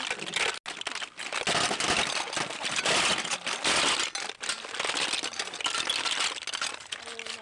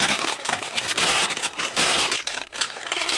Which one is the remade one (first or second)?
second